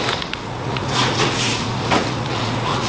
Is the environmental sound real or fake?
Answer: fake